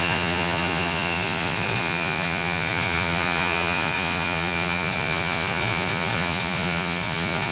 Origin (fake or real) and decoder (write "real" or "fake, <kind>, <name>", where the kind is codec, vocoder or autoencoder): fake, vocoder, Vocos